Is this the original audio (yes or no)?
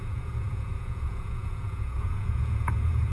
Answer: no